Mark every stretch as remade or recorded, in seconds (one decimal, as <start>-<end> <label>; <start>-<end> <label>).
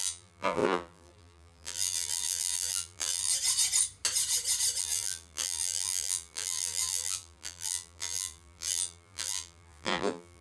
0.0-3.3 remade; 3.3-4.8 recorded; 4.8-10.4 remade